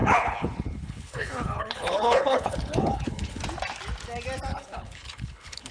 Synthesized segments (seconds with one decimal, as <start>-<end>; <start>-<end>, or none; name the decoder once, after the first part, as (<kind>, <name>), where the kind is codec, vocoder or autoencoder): 0.0-3.4 (codec, HILCodec); 4.5-5.7